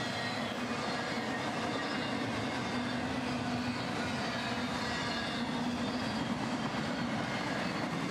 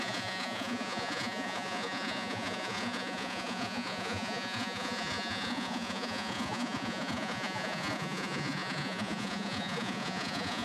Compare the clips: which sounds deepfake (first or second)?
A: second